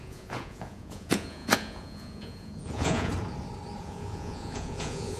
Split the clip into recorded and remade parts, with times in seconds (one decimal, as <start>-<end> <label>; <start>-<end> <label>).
0.0-3.1 remade; 3.1-3.8 recorded; 3.8-5.2 remade